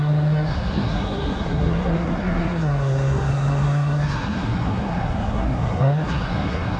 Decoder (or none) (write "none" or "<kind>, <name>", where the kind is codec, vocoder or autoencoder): codec, SNAC